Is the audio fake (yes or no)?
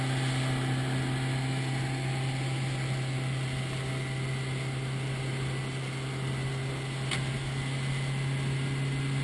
no